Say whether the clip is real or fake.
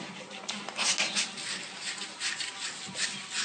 real